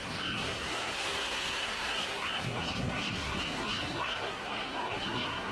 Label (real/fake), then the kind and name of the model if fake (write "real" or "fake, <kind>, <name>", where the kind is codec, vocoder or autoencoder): fake, codec, SNAC